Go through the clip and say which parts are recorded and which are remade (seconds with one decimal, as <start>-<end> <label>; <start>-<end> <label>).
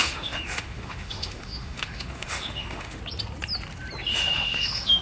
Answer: 0.0-3.0 remade; 3.0-4.1 recorded; 4.1-5.0 remade